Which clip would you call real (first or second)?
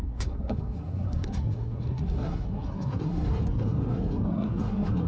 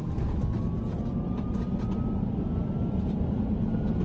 second